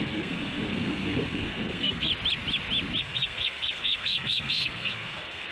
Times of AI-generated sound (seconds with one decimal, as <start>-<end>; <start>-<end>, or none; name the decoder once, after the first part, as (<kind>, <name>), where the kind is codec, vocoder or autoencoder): 0.0-2.1 (codec, SNAC); 3.0-5.5